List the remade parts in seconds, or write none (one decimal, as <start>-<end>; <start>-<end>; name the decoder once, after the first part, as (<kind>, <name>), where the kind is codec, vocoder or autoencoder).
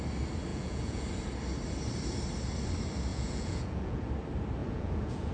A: 0.5-1.0 (vocoder, Vocos); 3.1-4.1; 4.6-5.3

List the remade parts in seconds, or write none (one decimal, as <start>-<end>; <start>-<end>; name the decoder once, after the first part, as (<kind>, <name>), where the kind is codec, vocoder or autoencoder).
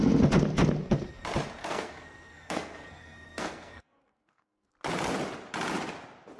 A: 1.6-4.7 (codec, SNAC)